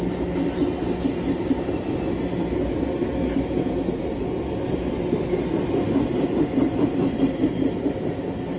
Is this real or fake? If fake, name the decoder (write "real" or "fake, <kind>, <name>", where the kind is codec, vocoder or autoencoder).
real